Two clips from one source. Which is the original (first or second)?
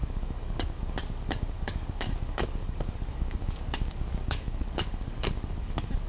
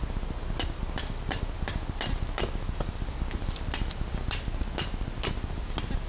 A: second